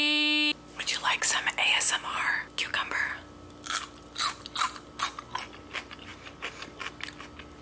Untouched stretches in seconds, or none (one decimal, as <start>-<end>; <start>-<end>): 0.0-6.1; 6.9-7.6